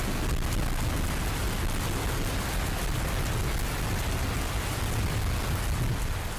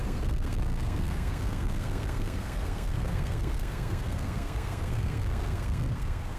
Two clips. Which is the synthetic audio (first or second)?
second